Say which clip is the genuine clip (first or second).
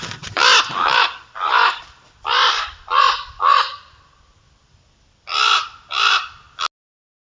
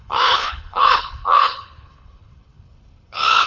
first